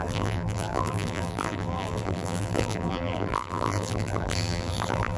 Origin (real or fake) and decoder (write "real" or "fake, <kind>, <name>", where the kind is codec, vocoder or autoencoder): fake, vocoder, BigVGAN v2